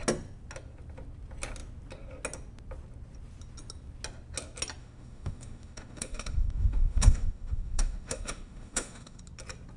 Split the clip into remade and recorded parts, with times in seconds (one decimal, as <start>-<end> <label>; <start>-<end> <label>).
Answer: 0.0-4.8 recorded; 4.8-9.2 remade; 9.2-9.8 recorded